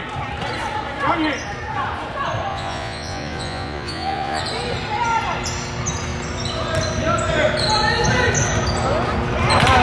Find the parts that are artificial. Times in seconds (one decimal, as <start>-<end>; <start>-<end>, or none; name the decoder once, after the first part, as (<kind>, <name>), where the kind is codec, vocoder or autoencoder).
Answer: 2.5-4.4 (vocoder, Vocos)